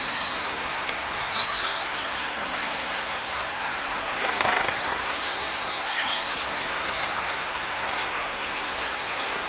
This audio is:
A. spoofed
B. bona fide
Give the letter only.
A